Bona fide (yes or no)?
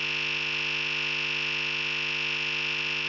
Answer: yes